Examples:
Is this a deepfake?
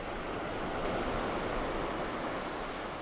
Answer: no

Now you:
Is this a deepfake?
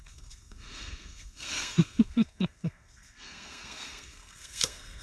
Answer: yes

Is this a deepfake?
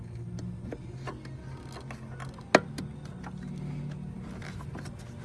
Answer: no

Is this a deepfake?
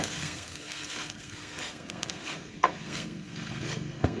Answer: yes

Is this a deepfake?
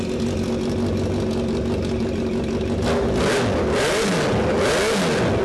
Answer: no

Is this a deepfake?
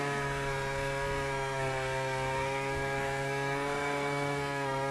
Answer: yes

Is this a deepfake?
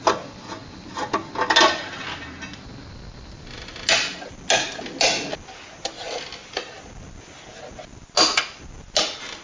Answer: no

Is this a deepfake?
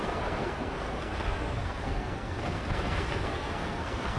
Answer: yes